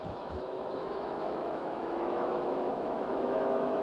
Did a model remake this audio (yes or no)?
yes